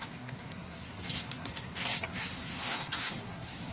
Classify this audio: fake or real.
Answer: fake